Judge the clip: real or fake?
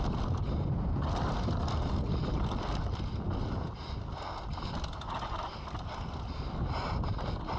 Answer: real